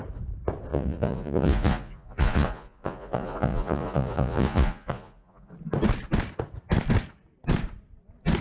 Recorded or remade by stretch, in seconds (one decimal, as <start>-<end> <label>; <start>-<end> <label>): 0.0-0.7 recorded; 0.7-5.5 remade; 5.5-8.4 recorded